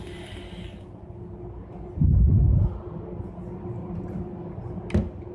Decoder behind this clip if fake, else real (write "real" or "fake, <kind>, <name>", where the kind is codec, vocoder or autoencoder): real